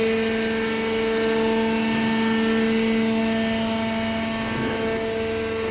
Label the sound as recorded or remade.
recorded